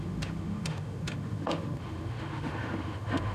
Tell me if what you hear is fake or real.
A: fake